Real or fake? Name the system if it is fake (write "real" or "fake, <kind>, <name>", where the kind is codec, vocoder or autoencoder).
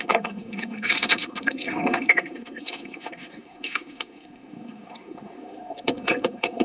fake, codec, SNAC